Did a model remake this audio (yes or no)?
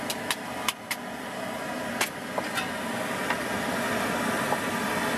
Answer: no